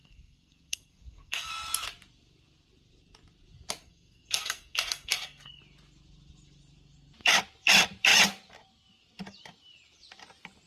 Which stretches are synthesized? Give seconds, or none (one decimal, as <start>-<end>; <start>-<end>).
0.0-1.5; 3.8-5.6